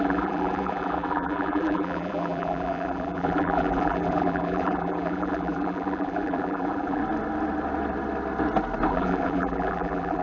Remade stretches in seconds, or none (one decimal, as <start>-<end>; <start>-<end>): 0.0-7.0; 8.9-10.2